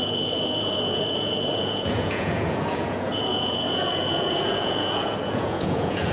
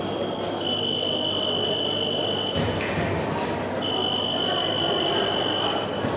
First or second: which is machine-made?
first